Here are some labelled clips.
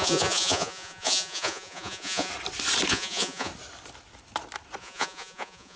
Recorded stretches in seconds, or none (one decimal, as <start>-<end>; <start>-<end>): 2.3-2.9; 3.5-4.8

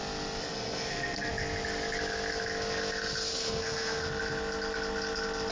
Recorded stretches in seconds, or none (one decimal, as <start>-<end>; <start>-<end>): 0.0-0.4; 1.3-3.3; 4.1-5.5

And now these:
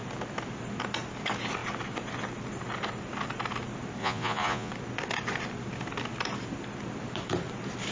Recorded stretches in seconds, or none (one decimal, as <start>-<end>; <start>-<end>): 0.0-4.0; 4.7-7.9

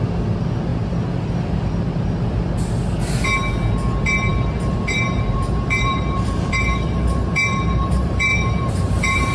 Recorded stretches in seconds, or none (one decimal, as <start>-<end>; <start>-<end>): 0.0-4.3

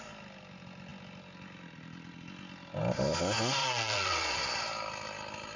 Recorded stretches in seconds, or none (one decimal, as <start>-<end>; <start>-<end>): 0.0-3.6; 4.4-5.6